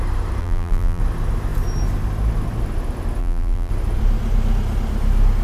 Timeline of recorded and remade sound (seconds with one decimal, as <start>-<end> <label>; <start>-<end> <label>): 0.0-0.4 recorded; 0.4-1.0 remade; 1.0-3.2 recorded; 3.2-3.7 remade; 3.7-5.4 recorded